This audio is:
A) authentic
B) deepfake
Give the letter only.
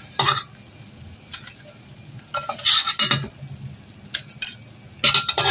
A